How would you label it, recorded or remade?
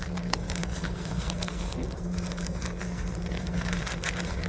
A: remade